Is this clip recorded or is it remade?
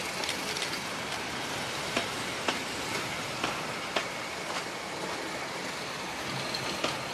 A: recorded